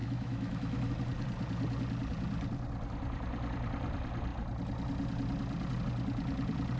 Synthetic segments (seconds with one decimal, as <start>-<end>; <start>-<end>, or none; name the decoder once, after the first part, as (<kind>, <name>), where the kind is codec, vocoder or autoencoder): 0.0-0.9 (autoencoder, DAC-VAE)